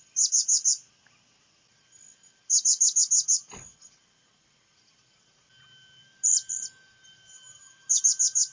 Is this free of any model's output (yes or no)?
yes